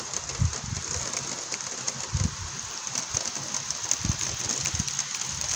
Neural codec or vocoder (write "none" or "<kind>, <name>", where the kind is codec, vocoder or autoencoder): none